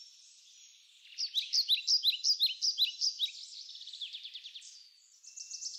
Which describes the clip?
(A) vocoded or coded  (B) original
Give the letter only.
B